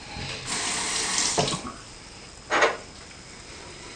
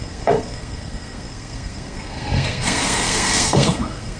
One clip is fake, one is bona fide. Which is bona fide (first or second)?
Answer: first